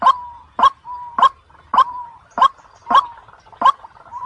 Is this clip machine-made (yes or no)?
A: no